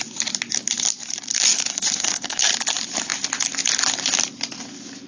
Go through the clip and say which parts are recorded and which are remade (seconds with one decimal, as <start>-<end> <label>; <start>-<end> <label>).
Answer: 0.0-1.7 recorded; 1.7-2.5 remade; 2.5-5.1 recorded